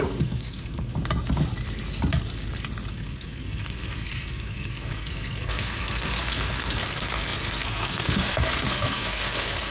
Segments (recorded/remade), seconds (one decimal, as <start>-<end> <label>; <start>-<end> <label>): 0.0-0.9 remade; 0.9-2.9 recorded; 2.9-9.7 remade